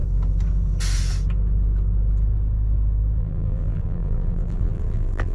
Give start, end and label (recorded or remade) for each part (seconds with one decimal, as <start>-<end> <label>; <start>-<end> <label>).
0.0-3.2 recorded; 3.2-5.3 remade